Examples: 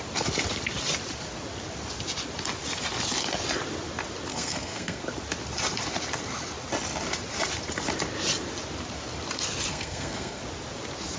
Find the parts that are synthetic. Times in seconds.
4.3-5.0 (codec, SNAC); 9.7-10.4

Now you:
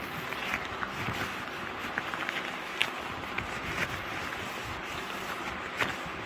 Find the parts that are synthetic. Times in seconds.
none

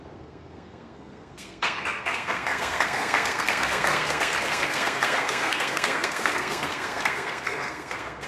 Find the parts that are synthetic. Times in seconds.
0.0-8.3 (codec, SNAC)

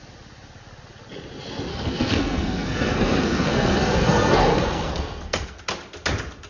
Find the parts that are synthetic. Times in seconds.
1.7-5.6 (codec, SNAC)

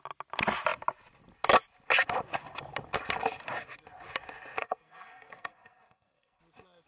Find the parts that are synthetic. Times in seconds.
4.6-6.4 (codec, SNAC)

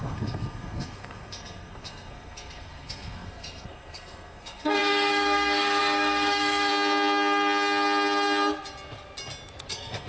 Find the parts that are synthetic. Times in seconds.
0.0-6.7 (codec, SNAC); 9.7-10.1

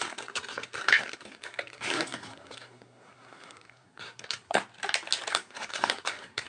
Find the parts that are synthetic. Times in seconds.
0.0-4.6 (codec, SNAC); 5.3-6.5

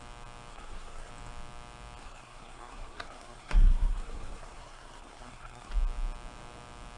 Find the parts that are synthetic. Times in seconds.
0.5-1.1 (codec, SNAC); 2.0-5.7